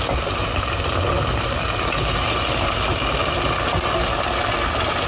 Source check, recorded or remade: recorded